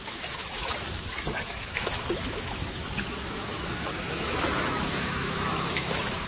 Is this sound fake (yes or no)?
yes